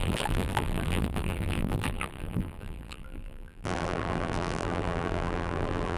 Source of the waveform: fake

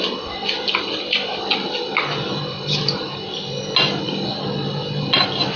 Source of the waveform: real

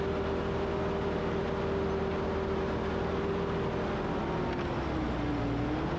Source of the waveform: real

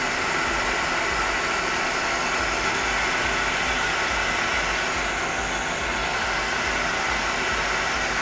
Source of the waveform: real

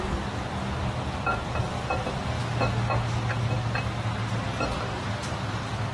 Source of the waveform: real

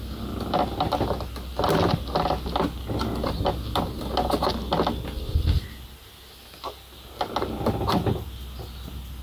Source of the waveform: real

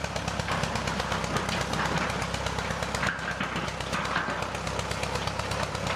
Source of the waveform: real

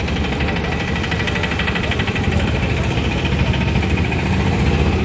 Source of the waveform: real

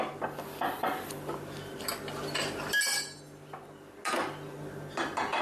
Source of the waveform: real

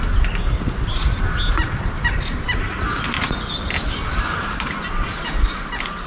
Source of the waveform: real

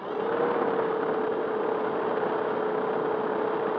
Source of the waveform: real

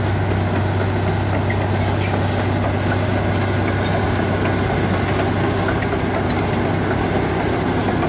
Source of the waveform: real